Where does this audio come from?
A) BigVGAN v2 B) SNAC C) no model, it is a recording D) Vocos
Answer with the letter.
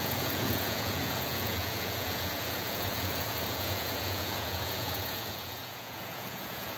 D